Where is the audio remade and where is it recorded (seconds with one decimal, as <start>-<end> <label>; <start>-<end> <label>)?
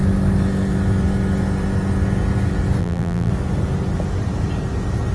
0.0-2.8 recorded; 2.8-3.3 remade; 3.3-5.1 recorded